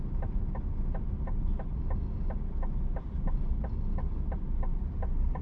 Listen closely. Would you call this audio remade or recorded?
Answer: recorded